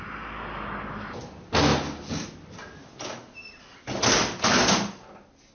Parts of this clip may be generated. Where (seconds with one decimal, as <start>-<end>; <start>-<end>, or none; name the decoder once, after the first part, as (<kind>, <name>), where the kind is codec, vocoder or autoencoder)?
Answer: none